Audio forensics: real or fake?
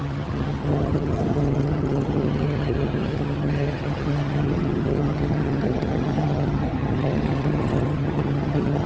fake